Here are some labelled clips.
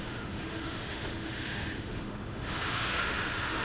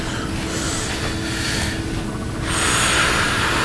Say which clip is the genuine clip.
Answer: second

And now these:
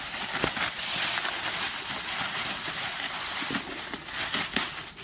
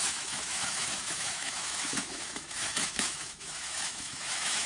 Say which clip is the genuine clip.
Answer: first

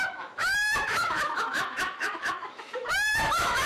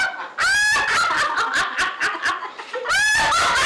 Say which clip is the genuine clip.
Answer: second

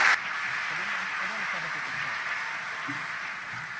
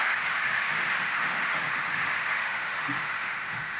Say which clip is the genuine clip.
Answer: first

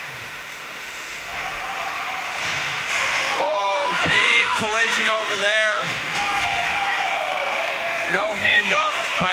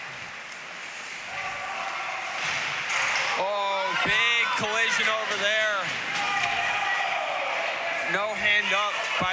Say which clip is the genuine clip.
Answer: second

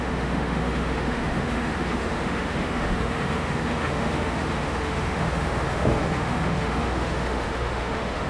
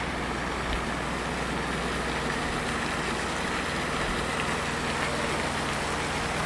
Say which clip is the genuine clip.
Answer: second